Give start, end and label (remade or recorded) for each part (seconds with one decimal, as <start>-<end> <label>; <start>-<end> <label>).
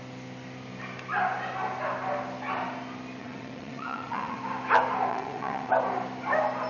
0.0-3.2 recorded; 3.2-4.4 remade; 4.4-5.1 recorded; 5.1-5.7 remade; 5.7-6.7 recorded